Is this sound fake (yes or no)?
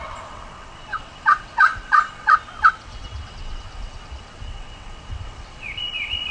yes